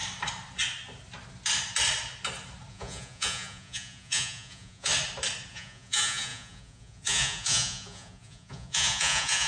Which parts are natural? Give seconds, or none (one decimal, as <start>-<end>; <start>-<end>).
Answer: 0.0-2.7; 4.9-5.5